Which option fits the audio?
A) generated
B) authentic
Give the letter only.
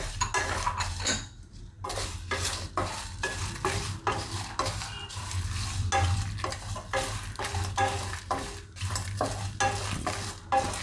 B